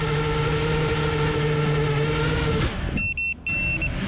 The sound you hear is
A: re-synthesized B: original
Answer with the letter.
B